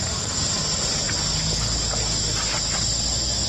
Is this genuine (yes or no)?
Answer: yes